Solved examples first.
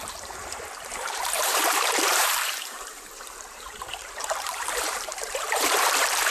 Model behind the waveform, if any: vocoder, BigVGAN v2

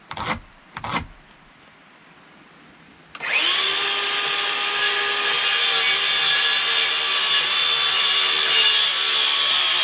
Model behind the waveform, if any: none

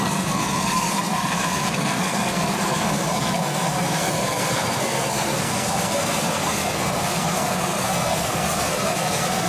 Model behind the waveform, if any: codec, SNAC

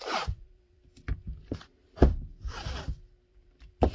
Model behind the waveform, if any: vocoder, BigVGAN v2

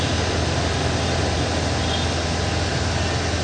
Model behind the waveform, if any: none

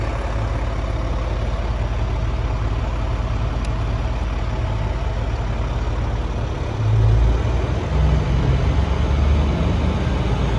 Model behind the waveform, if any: none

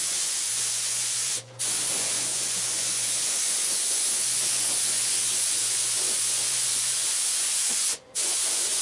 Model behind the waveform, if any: vocoder, Vocos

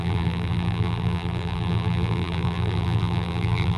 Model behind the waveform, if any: vocoder, BigVGAN v2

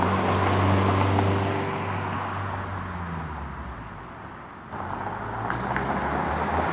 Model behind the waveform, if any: none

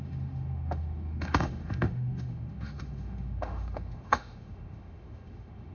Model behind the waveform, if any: autoencoder, DAC-VAE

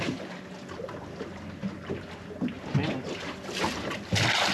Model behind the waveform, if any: none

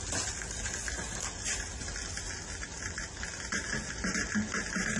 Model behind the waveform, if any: none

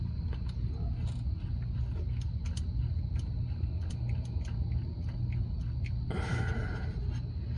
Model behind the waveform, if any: none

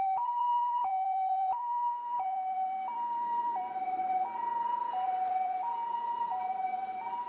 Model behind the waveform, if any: vocoder, BigVGAN v2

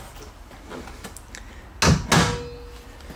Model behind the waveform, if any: none